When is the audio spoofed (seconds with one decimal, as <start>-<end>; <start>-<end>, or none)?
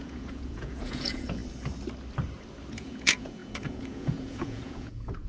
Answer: 0.0-1.4; 2.7-5.3